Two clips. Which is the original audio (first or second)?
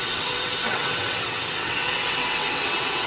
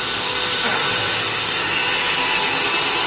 second